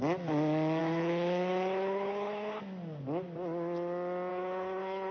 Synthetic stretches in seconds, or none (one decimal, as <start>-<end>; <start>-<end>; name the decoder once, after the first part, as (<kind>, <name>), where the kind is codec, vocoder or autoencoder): 0.8-2.6 (codec, HILCodec); 4.3-5.1